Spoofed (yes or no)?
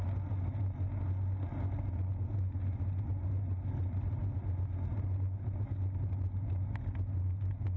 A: no